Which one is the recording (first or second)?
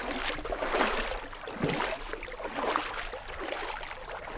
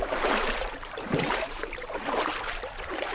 first